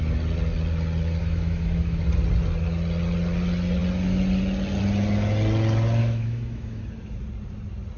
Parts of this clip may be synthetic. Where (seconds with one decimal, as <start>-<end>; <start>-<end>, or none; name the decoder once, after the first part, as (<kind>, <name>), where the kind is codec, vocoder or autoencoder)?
1.2-2.0 (autoencoder, DAC-VAE); 6.0-6.8